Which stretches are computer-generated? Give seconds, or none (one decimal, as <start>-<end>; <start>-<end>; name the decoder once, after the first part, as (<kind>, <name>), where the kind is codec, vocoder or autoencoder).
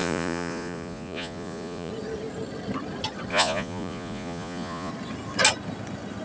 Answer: 0.0-1.9 (vocoder, Vocos); 3.3-4.9